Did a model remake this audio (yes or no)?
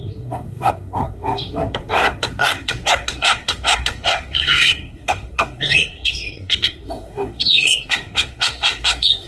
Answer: yes